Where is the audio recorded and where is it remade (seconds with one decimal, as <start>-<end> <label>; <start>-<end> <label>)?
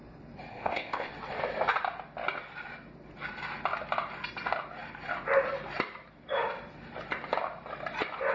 0.0-0.5 recorded; 0.5-1.1 remade; 1.1-8.3 recorded